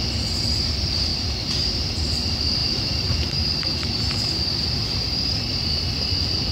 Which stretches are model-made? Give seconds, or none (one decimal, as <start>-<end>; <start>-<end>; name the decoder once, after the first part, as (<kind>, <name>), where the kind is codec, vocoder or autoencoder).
1.1-1.9 (vocoder, BigVGAN v2); 2.6-4.3